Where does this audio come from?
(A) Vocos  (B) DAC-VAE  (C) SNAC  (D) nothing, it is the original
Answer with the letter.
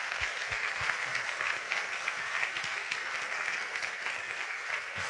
C